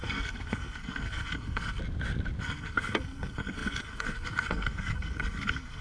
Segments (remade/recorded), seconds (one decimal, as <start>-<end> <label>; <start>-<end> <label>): 0.0-1.8 remade; 1.8-2.4 recorded; 2.4-5.8 remade